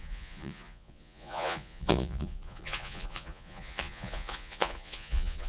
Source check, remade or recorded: remade